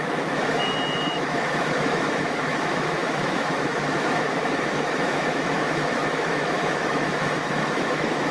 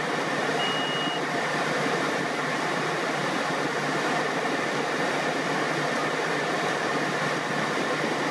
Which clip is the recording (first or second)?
second